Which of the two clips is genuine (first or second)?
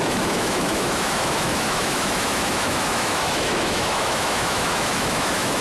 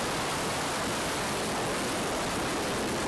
second